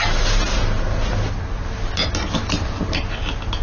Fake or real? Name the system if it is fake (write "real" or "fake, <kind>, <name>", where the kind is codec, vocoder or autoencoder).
real